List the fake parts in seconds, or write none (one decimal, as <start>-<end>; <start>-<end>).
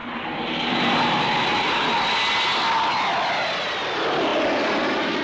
none